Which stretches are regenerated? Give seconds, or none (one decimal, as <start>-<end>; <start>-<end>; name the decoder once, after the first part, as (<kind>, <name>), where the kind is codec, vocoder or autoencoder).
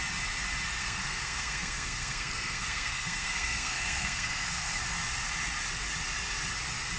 0.8-4.8 (codec, SNAC)